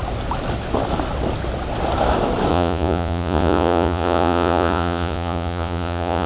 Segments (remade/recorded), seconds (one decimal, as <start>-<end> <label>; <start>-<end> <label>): 0.0-2.5 recorded; 2.5-6.3 remade